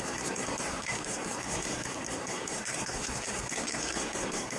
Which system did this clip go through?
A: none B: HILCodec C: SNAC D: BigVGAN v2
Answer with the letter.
C